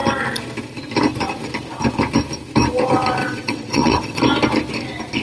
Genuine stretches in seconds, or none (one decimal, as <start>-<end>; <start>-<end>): 0.0-3.2; 4.2-5.2